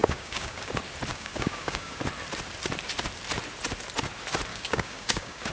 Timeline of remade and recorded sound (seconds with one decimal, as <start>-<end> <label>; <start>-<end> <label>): 0.0-0.7 remade; 0.7-1.1 recorded; 1.1-2.0 remade; 2.0-4.5 recorded; 4.5-5.5 remade